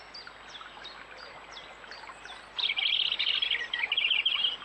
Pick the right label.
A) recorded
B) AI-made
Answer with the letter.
A